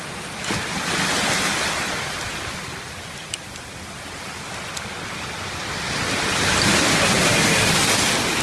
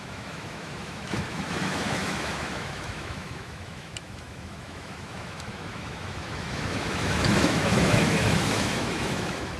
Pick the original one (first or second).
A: first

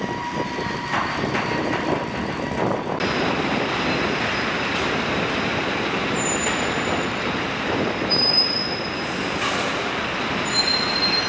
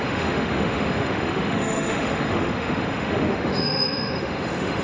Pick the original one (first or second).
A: first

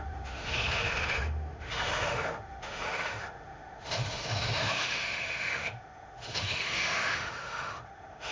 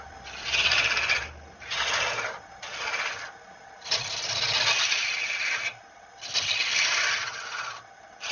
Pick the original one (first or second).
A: second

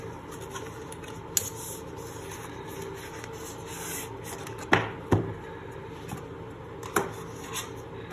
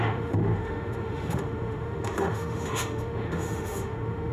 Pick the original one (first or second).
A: first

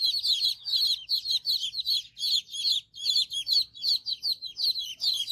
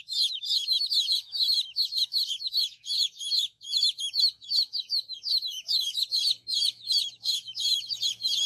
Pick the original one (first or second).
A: first